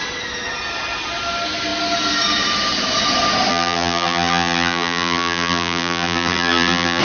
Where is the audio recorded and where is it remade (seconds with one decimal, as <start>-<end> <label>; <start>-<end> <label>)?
0.0-3.5 recorded; 3.5-7.0 remade